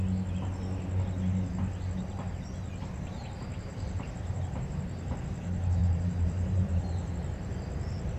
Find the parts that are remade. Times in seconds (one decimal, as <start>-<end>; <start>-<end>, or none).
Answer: 3.7-4.8; 5.8-7.1